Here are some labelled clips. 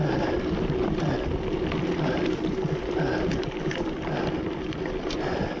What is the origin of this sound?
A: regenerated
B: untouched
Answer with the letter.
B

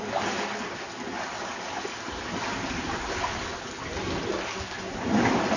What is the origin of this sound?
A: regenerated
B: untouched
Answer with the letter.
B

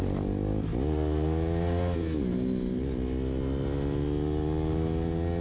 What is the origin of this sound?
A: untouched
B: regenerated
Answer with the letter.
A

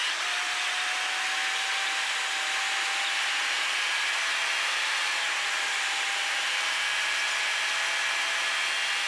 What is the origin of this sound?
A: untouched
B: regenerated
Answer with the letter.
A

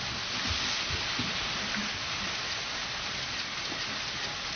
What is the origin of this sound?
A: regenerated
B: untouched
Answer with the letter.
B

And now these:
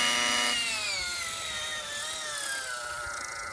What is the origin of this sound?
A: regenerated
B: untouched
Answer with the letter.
B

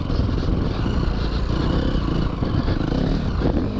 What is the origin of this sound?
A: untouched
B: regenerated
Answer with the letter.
A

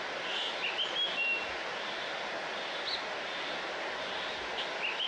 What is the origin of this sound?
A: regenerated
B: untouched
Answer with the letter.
B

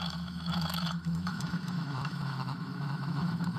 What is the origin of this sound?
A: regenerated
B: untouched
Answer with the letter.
A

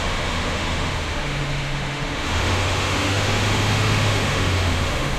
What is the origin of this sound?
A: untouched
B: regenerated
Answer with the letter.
B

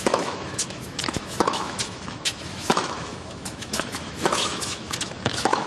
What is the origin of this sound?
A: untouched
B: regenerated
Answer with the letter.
B